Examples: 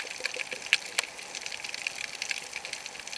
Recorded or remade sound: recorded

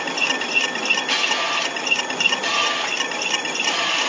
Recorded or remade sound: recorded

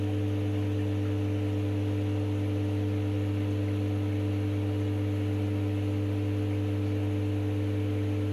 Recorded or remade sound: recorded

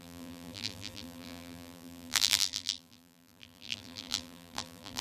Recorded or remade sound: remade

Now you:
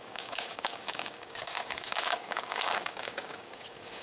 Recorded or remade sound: remade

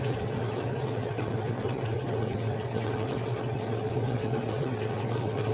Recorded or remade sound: remade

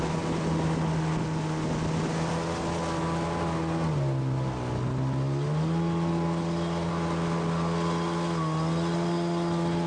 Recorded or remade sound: recorded